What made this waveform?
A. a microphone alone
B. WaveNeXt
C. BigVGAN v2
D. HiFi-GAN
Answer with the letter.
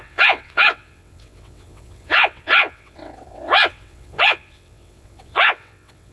B